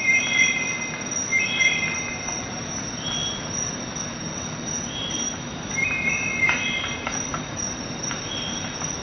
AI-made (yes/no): no